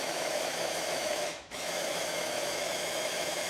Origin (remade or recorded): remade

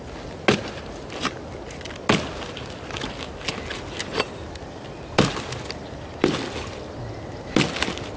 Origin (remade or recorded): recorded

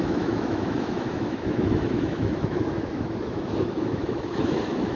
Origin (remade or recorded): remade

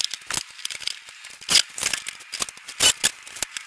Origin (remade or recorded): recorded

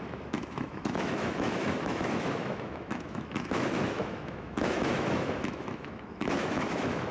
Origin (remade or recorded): remade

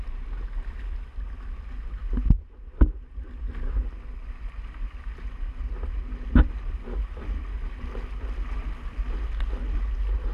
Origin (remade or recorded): recorded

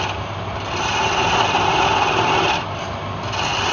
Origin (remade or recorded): recorded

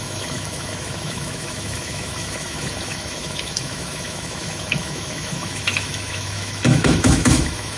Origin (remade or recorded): remade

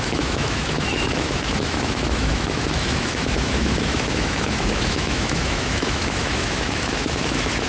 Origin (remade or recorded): remade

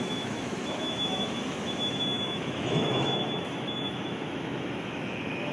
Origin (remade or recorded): remade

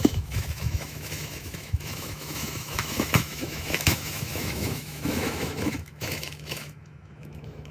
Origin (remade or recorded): remade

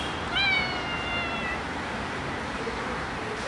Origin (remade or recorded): recorded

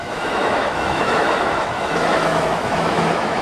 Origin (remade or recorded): remade